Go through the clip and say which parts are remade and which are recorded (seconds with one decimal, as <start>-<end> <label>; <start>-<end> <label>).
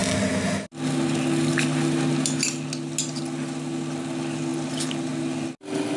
0.0-6.0 recorded